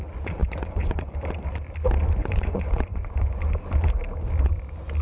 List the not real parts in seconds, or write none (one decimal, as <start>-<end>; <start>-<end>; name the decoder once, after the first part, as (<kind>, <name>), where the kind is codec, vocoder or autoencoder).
0.4-1.1 (vocoder, Vocos); 2.2-3.4